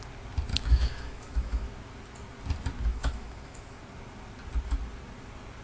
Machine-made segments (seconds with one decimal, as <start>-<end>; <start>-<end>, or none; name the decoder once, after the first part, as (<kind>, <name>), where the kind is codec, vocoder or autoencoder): 0.5-1.7 (autoencoder, DAC-VAE); 2.9-3.8